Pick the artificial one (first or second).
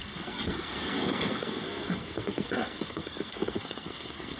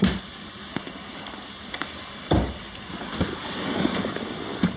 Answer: first